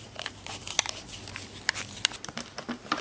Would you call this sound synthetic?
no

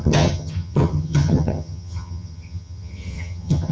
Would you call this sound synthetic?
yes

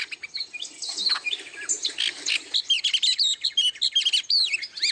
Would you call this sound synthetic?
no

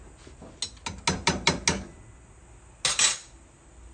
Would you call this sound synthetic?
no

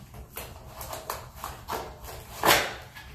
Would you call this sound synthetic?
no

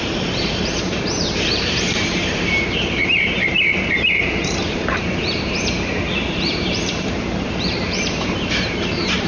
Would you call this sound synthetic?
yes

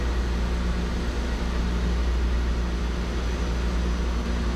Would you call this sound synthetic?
no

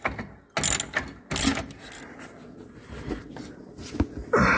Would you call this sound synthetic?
no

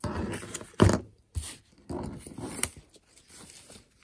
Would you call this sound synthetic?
no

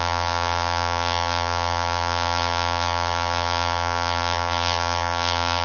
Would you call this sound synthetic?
yes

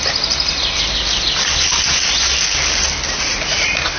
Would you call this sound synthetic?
no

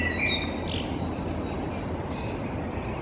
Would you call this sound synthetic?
no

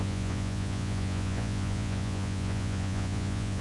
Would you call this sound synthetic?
yes